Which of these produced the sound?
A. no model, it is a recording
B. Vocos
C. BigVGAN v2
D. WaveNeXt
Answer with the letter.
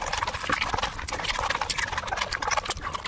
A